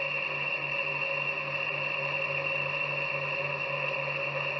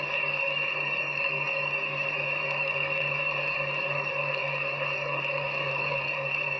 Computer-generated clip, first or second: second